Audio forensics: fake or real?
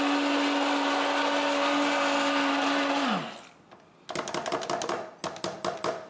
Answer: real